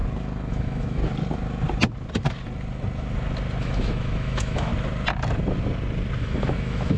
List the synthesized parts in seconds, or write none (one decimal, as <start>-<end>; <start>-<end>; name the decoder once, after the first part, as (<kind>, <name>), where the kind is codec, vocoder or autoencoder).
0.5-1.0 (autoencoder, DAC-VAE); 3.6-4.7; 6.2-7.0